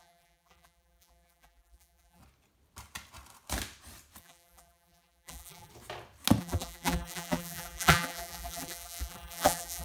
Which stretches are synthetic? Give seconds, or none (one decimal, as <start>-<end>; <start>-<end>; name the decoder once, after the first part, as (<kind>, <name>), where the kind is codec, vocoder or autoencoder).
0.0-2.2 (vocoder, BigVGAN v2); 4.2-5.7; 6.4-9.8